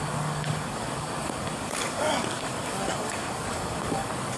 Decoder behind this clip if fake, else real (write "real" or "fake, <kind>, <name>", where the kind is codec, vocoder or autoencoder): fake, codec, DAC